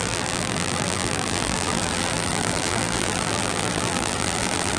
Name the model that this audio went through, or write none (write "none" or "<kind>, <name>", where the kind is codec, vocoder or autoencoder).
vocoder, BigVGAN v2